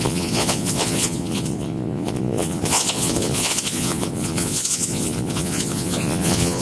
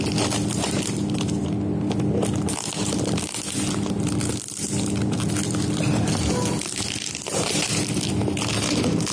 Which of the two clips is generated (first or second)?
first